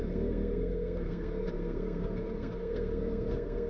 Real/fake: fake